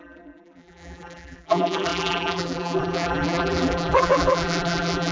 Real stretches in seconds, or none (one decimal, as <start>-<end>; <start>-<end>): none